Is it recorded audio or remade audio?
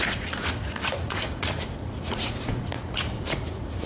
remade